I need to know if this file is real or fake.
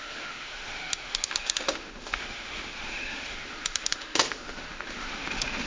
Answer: fake